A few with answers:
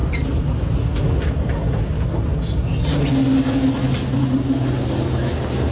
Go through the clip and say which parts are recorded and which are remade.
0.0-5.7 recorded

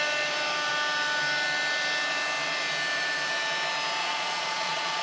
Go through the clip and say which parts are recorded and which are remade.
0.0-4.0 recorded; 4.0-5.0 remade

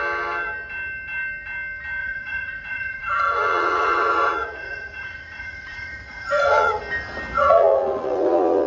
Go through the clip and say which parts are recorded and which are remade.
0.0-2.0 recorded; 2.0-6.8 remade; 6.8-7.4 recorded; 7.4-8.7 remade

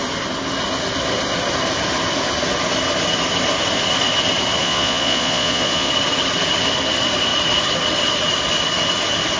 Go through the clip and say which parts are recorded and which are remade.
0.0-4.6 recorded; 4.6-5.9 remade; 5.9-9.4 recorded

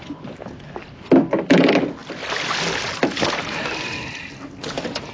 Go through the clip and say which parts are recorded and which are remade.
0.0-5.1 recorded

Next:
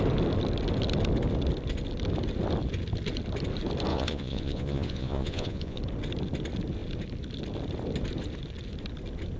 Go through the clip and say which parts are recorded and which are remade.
0.0-3.9 recorded; 3.9-5.8 remade; 5.8-9.4 recorded